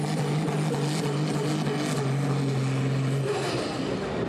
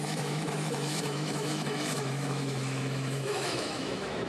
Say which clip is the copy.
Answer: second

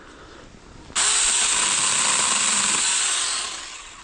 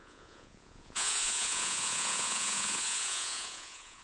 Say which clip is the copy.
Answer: second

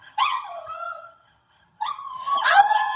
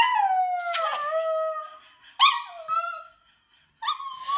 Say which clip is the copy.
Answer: first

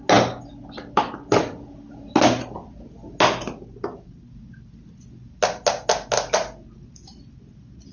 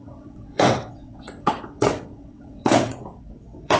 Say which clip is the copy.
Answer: second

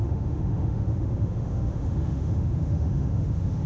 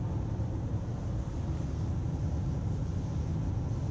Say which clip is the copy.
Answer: first